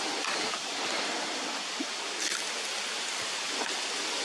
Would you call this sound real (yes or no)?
yes